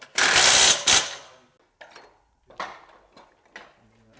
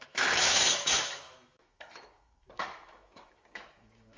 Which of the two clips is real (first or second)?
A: first